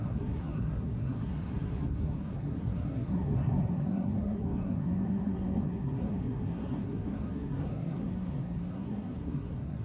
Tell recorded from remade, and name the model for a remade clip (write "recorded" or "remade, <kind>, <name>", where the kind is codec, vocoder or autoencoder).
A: remade, codec, SNAC